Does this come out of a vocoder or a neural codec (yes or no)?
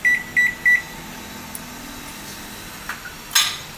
no